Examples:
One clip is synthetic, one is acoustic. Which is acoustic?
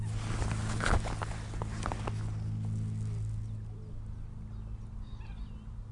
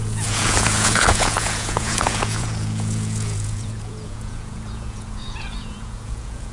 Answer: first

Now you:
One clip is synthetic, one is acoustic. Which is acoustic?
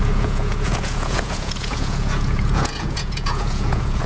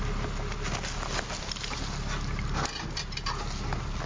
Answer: second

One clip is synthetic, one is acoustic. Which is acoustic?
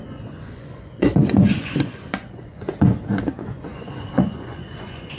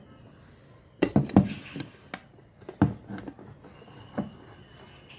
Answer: second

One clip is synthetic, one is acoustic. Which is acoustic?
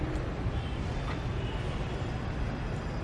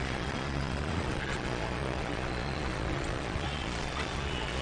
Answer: first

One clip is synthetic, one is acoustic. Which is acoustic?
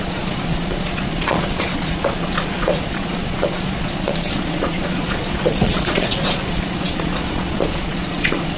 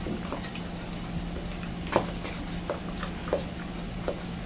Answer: second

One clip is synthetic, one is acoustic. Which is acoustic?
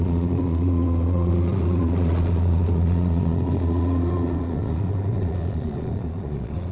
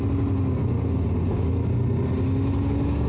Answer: second